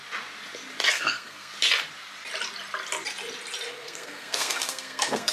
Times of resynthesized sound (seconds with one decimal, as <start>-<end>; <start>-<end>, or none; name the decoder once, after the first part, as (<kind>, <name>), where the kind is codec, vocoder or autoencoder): 0.9-1.5 (codec, SNAC); 3.7-5.3